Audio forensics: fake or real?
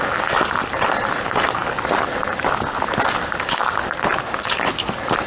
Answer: real